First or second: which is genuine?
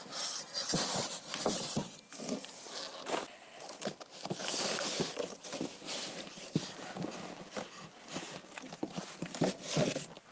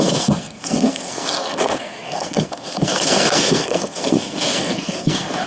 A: first